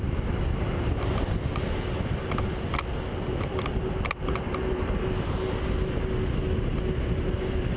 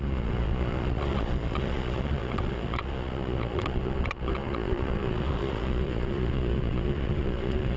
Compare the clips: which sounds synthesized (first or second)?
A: second